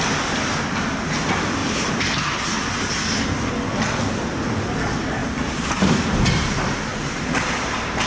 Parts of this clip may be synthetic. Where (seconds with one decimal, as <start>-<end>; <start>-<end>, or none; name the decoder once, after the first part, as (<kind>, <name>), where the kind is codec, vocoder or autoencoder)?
1.6-2.1 (vocoder, BigVGAN v2); 5.2-5.8